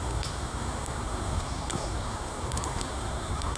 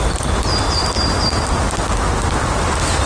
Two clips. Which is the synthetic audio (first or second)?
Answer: first